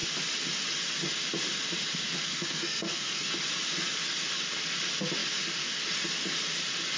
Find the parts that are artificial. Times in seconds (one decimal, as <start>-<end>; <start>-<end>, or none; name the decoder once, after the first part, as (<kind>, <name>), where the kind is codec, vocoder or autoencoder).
2.2-3.3 (codec, SNAC)